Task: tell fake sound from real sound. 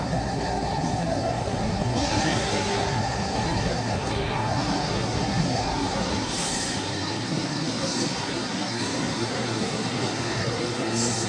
fake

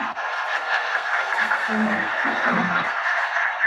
fake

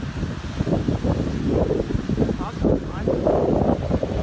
real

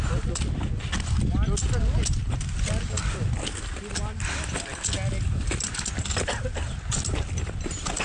real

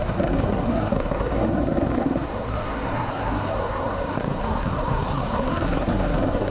fake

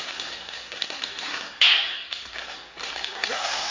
fake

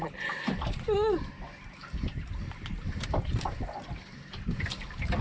real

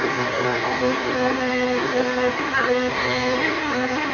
fake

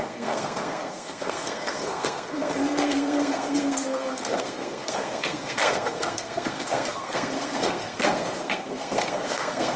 fake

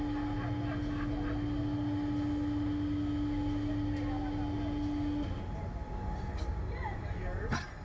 real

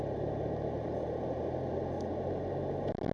real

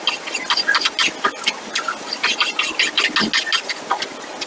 real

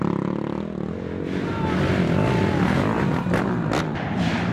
real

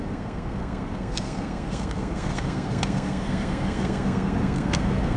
fake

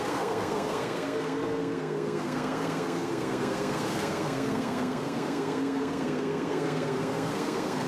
fake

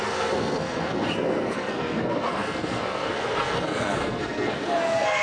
fake